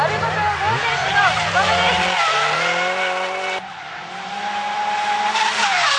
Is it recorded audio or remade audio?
recorded